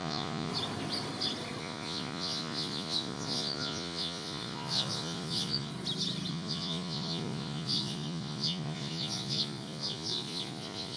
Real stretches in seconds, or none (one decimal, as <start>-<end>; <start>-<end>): 0.5-1.6; 5.7-6.3